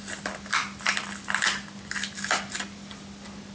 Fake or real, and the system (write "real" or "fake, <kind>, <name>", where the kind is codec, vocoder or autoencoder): real